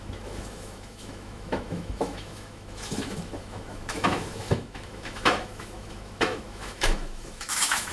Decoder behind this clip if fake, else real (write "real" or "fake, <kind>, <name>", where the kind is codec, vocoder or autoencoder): fake, autoencoder, DAC-VAE